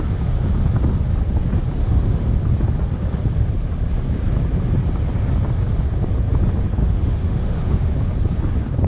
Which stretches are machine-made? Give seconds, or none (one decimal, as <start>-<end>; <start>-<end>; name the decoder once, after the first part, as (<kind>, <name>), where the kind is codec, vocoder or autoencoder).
1.8-2.3 (autoencoder, DAC-VAE); 6.8-7.9